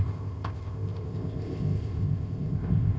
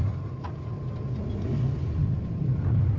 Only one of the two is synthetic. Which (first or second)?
first